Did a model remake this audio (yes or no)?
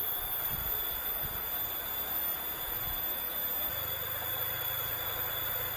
no